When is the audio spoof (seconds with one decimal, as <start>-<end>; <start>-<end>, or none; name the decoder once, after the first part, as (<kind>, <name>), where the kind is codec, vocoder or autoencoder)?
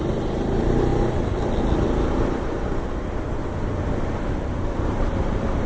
0.0-0.9 (vocoder, BigVGAN v2); 4.3-5.7